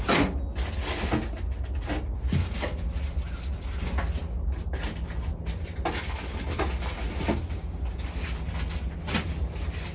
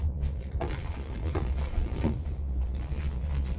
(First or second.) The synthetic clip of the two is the second